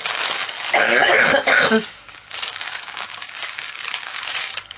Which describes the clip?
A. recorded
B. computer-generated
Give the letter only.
B